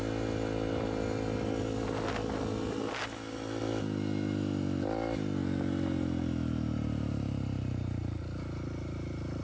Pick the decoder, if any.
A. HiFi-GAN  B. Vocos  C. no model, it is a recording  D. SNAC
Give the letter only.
C